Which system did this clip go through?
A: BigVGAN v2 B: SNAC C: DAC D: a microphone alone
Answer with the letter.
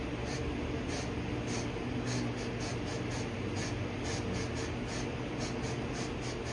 D